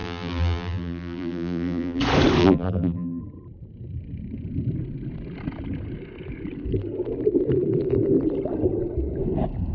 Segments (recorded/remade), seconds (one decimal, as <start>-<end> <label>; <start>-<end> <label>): 0.0-2.0 remade; 2.0-2.4 recorded; 2.4-3.2 remade; 3.2-9.7 recorded